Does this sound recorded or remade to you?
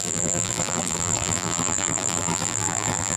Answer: remade